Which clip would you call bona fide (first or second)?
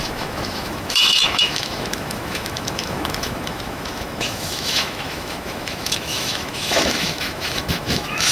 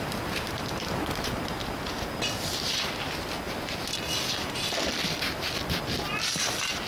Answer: second